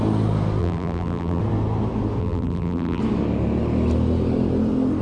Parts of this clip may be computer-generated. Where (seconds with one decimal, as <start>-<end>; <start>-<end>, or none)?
0.6-1.4; 2.2-3.0